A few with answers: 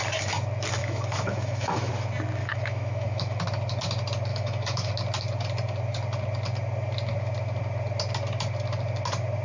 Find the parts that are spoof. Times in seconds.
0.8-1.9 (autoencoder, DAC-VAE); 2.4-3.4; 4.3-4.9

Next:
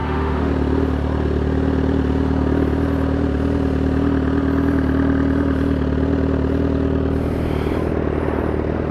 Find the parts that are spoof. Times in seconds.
0.0-0.5 (autoencoder, DAC-VAE)

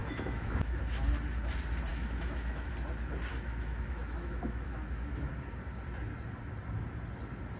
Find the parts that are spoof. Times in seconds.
0.0-0.8 (autoencoder, DAC-VAE); 1.9-2.7; 3.3-5.3